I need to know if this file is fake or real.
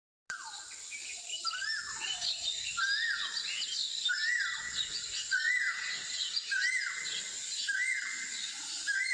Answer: real